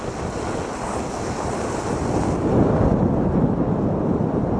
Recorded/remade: recorded